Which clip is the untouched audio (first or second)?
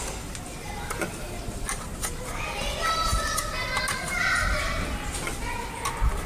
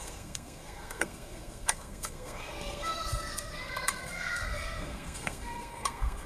first